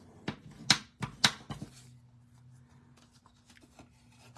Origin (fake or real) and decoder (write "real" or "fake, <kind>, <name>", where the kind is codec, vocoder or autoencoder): real